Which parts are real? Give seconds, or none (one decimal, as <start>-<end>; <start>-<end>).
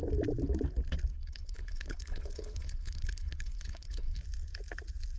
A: 0.0-1.1; 4.2-5.2